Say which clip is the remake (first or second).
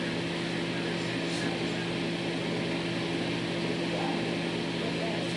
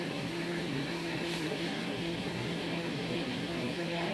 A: second